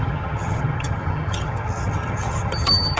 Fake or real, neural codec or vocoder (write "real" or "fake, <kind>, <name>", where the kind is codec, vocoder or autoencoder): fake, vocoder, HiFi-GAN